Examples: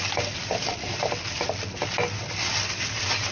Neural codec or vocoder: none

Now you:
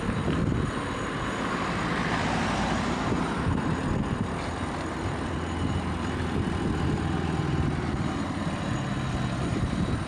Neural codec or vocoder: vocoder, BigVGAN v2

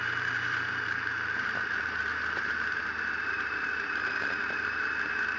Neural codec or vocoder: vocoder, BigVGAN v2